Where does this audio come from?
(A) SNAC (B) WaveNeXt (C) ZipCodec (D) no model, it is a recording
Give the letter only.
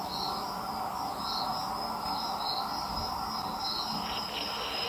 D